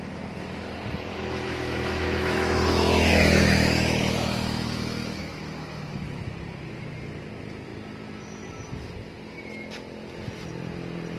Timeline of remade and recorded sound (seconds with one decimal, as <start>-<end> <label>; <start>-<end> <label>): 0.0-1.1 recorded; 1.1-6.3 remade; 6.3-11.2 recorded